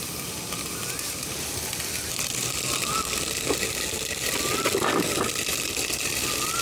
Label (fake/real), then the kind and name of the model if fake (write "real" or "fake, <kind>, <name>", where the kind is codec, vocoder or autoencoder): real